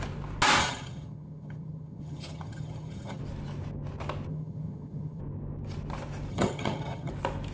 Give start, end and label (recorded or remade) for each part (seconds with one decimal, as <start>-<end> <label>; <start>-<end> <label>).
0.0-0.6 recorded; 0.6-3.2 remade; 3.2-4.3 recorded; 4.3-5.2 remade; 5.2-6.3 recorded; 6.3-7.1 remade; 7.1-7.5 recorded